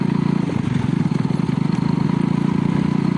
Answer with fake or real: real